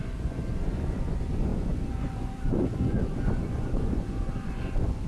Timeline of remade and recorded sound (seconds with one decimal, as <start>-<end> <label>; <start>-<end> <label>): 0.0-5.1 remade